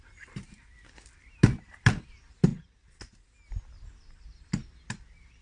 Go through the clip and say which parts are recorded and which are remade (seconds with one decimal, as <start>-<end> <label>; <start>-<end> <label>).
0.0-5.4 recorded